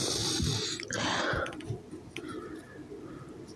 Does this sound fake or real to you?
real